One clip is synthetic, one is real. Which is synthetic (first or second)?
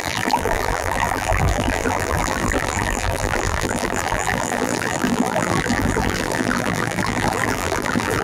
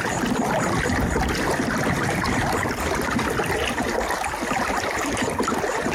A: first